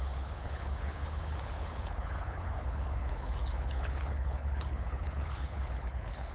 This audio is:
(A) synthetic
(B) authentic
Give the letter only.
A